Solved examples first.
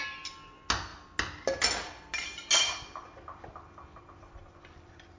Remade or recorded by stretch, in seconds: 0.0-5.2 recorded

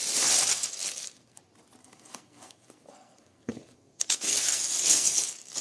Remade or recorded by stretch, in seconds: 0.0-0.5 recorded; 0.5-1.4 remade; 1.4-1.8 recorded; 1.8-5.6 remade

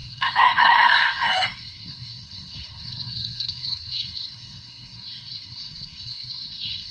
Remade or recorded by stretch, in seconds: 0.0-6.9 remade